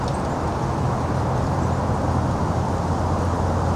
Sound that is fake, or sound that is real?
real